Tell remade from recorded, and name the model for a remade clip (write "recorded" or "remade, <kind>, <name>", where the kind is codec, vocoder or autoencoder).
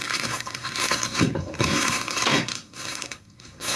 remade, codec, SNAC